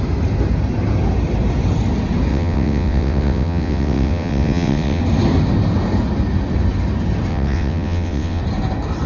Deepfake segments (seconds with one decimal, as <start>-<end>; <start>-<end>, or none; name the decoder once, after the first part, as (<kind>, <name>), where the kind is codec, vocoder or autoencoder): 2.3-5.0 (vocoder, WaveNeXt); 7.3-8.4